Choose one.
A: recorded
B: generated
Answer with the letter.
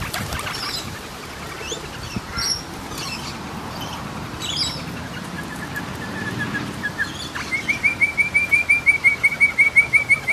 A